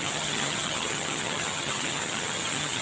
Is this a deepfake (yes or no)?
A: yes